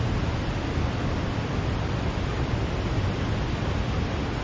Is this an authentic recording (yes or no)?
yes